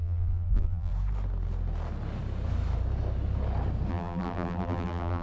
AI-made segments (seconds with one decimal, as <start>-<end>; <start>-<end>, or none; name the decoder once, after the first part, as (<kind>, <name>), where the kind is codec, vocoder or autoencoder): 0.0-0.9 (vocoder, BigVGAN v2); 3.9-5.2